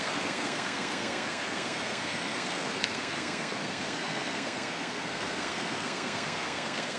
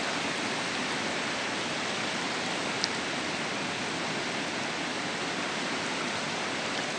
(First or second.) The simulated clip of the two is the first